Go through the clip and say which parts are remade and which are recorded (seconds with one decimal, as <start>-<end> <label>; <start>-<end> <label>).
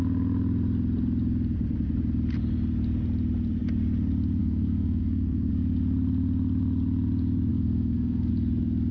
0.0-4.4 recorded; 4.4-5.5 remade; 5.5-7.5 recorded; 7.5-8.3 remade; 8.3-8.9 recorded